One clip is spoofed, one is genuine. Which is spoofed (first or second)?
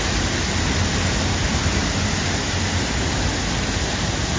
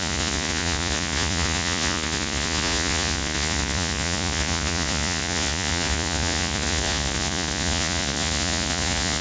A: second